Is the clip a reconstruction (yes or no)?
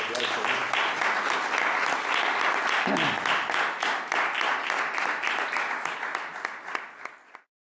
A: no